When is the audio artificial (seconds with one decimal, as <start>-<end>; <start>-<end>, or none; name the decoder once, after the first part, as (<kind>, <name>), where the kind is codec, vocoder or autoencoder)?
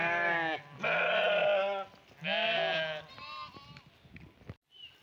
none